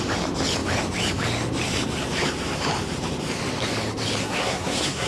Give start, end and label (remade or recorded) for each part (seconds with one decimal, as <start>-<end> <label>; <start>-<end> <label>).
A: 0.0-4.2 recorded; 4.2-5.1 remade

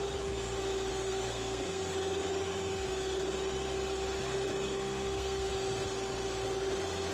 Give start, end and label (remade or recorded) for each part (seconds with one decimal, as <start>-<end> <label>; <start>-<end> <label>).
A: 0.0-0.9 recorded; 0.9-1.8 remade; 1.8-4.5 recorded; 4.5-5.5 remade; 5.5-7.1 recorded

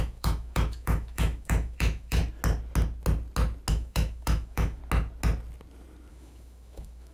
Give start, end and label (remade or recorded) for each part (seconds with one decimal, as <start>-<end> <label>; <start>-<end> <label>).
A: 0.0-2.2 remade; 2.2-3.7 recorded; 3.7-4.8 remade; 4.8-6.1 recorded; 6.1-7.1 remade

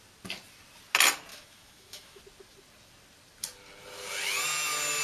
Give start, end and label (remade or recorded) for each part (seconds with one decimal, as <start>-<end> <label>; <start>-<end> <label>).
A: 0.0-1.3 recorded; 1.3-2.2 remade; 2.2-5.0 recorded

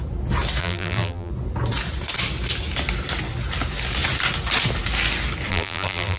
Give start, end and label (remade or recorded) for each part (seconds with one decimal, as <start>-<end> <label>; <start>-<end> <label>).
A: 0.0-0.6 recorded; 0.6-1.3 remade; 1.3-5.5 recorded; 5.5-6.2 remade

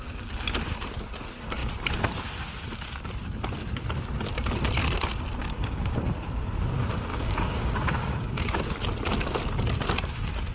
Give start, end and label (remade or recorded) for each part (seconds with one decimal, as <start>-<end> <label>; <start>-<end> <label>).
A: 0.0-5.4 recorded; 5.4-6.0 remade; 6.0-7.1 recorded; 7.1-8.5 remade; 8.5-10.5 recorded